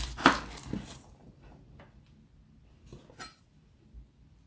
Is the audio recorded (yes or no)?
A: yes